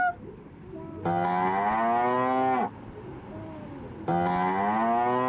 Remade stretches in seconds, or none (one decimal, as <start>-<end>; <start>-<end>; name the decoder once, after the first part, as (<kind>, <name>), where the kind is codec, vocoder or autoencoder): 3.1-4.1 (vocoder, BigVGAN v2)